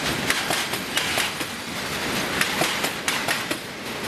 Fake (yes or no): no